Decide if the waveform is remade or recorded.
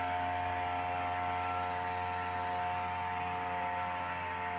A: recorded